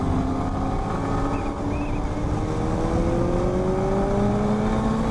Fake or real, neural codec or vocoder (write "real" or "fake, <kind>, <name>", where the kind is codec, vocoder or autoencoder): real